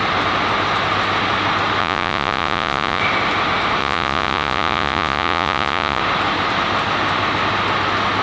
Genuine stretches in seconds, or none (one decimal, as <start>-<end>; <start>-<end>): 0.0-1.8; 3.0-3.8; 6.0-8.2